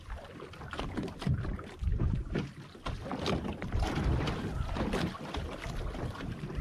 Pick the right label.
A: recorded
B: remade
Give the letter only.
A